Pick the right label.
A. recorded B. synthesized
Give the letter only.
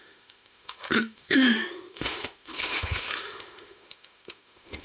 B